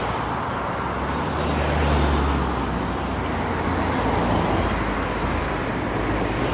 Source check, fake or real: real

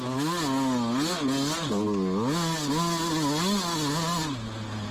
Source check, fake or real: real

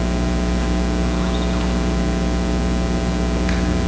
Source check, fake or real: real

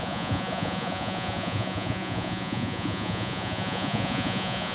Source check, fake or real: fake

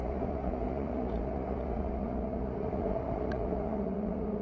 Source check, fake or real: fake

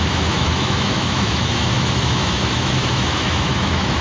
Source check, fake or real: fake